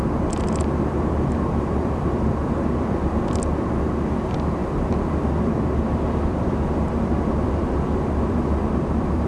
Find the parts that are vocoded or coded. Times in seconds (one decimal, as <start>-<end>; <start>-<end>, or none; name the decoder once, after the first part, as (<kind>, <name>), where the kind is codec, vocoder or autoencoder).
0.0-4.6 (vocoder, BigVGAN v2); 5.1-9.3

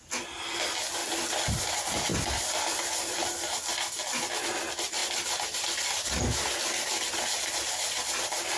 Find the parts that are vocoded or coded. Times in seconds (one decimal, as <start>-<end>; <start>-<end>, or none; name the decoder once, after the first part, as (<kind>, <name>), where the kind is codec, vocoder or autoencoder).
2.1-3.6 (vocoder, BigVGAN v2)

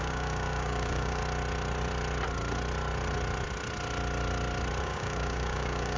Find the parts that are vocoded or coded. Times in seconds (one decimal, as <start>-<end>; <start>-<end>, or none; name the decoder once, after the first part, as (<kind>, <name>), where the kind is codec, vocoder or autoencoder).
0.0-1.2 (codec, DAC); 4.8-6.0